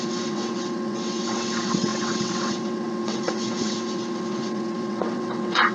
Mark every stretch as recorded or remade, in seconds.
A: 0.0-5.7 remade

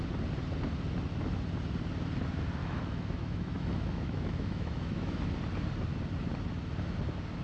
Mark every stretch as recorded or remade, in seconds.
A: 0.0-2.6 recorded; 2.6-5.3 remade; 5.3-7.4 recorded

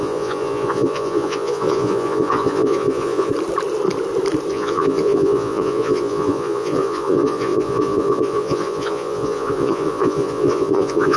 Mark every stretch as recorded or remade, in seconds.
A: 0.0-3.3 remade; 3.3-4.5 recorded; 4.5-11.2 remade

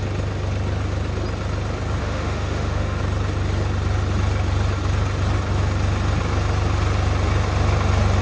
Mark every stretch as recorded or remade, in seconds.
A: 0.0-2.0 recorded; 2.0-3.0 remade; 3.0-8.2 recorded

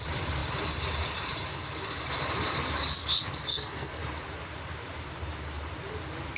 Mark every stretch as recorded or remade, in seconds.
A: 0.0-3.5 recorded; 3.5-4.0 remade; 4.0-6.4 recorded

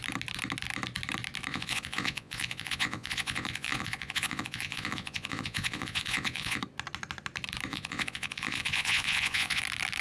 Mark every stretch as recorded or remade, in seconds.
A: 0.0-1.5 recorded; 1.5-6.6 remade; 6.6-7.7 recorded; 7.7-9.6 remade; 9.6-10.0 recorded

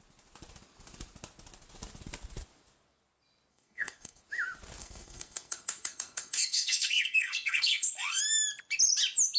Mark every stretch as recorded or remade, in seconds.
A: 0.0-3.5 recorded; 3.5-4.2 remade; 4.2-4.8 recorded; 4.8-8.2 remade; 8.2-9.4 recorded

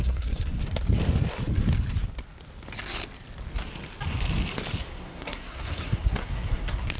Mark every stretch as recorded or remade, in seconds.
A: 0.0-0.6 remade; 0.6-4.8 recorded; 4.8-7.0 remade